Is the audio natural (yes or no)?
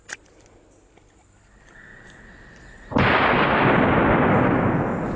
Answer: yes